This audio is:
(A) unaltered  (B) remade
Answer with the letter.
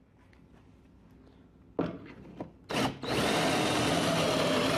A